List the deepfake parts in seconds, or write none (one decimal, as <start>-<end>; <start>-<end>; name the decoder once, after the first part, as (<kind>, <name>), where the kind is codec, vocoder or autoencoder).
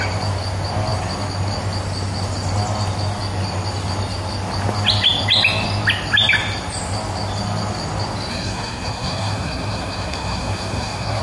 8.3-11.2 (codec, SNAC)